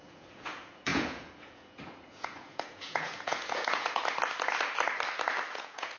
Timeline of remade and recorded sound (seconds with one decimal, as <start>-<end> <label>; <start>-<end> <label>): 0.0-4.0 remade; 4.0-5.5 recorded; 5.5-6.0 remade